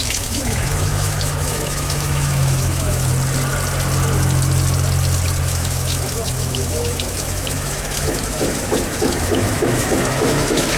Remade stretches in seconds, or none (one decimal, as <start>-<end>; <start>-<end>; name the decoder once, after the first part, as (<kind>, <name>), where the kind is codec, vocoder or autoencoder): 0.0-3.1 (autoencoder, DAC-VAE); 5.4-10.8